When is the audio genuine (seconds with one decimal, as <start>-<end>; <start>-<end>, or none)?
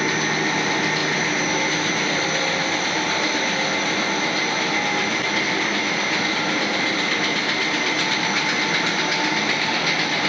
0.0-1.0; 1.6-10.3